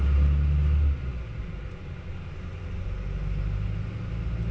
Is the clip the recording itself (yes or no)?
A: yes